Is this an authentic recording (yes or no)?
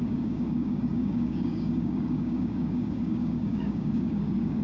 no